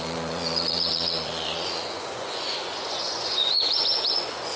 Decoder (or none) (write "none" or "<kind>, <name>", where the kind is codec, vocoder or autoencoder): vocoder, Vocos